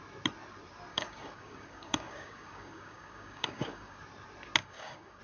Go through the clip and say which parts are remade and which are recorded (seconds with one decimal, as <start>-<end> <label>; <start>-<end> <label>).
0.0-0.9 recorded; 0.9-4.0 remade; 4.0-4.6 recorded; 4.6-5.2 remade

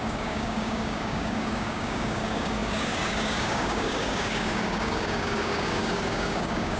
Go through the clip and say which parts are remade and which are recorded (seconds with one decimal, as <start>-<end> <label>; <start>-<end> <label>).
0.0-6.8 remade

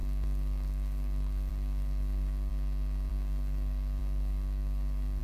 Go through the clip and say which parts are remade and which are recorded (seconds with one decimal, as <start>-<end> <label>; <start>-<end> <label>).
0.0-2.5 remade; 2.5-3.1 recorded; 3.1-5.2 remade

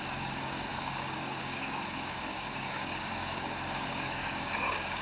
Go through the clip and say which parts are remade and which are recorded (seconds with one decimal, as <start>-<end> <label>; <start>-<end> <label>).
0.0-5.0 remade